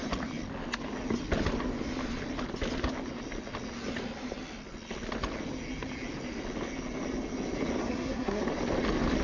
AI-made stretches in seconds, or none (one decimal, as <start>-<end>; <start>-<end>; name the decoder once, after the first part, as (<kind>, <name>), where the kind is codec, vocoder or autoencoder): 7.8-8.4 (codec, SNAC)